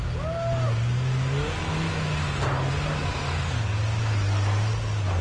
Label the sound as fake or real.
real